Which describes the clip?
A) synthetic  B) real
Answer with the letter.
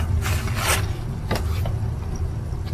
B